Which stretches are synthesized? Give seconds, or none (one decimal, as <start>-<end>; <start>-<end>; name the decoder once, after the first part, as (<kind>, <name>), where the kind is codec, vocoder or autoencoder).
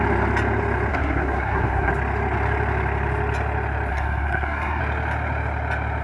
0.9-1.9 (codec, SNAC); 3.9-4.8